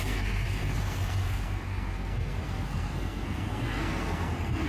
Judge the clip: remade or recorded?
remade